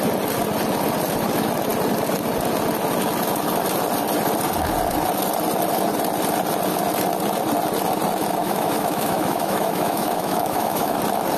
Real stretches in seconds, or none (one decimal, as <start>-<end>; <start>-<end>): 0.0-8.4; 11.0-11.4